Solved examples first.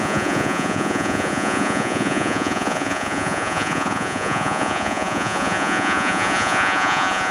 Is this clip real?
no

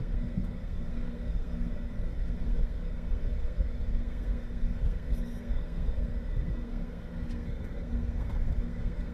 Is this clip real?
no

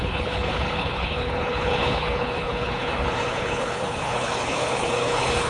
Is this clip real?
no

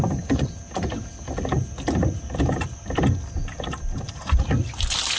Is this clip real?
yes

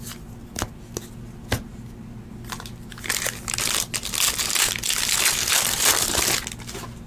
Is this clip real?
yes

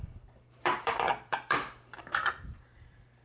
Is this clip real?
no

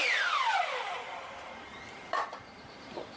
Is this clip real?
no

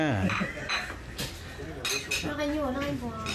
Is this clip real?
yes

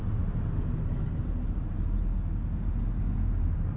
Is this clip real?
yes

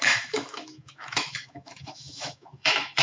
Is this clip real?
no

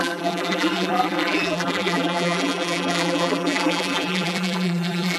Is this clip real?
no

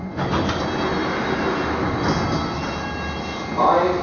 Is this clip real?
yes